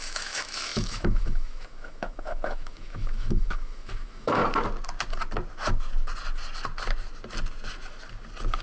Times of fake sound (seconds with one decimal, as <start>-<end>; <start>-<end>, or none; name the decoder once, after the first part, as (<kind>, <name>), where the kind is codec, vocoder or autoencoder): 0.0-4.4 (autoencoder, DAC-VAE)